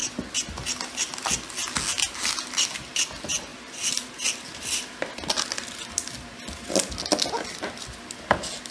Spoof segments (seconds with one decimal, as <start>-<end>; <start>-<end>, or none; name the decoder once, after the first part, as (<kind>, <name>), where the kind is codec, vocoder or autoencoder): none